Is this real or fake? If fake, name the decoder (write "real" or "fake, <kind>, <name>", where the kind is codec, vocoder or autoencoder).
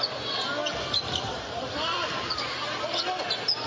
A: fake, vocoder, BigVGAN v2